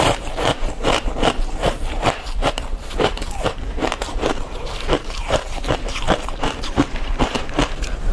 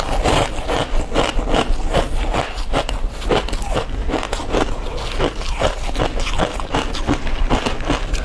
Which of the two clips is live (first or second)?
second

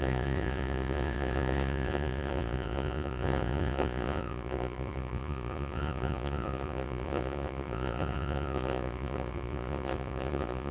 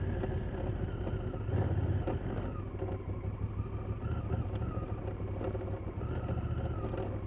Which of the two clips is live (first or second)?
second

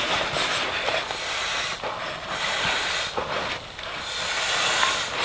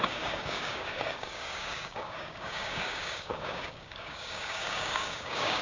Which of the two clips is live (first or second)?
first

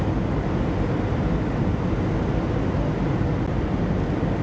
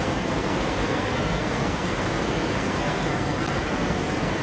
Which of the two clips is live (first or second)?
first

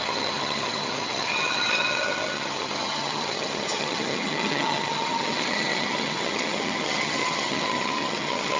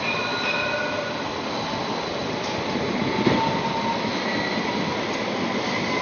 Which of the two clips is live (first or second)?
second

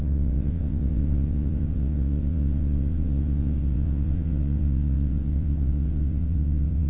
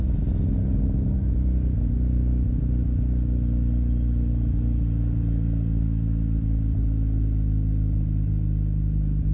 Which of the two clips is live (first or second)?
second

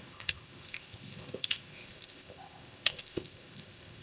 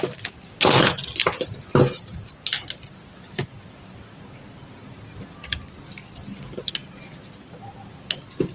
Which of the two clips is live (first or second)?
second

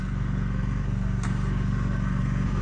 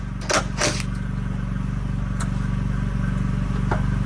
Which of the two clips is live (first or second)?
second